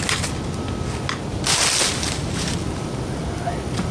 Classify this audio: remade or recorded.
recorded